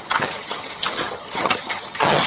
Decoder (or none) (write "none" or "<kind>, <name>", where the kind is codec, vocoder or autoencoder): vocoder, HiFi-GAN